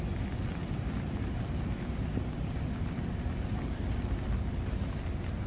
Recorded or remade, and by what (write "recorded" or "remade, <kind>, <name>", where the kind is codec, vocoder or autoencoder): recorded